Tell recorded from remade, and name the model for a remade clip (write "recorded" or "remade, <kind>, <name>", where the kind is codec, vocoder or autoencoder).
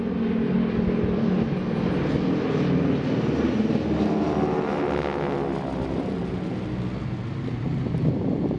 recorded